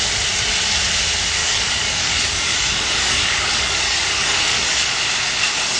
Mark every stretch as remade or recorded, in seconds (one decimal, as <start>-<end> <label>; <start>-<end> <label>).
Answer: 0.0-1.4 recorded; 1.4-4.9 remade; 4.9-5.8 recorded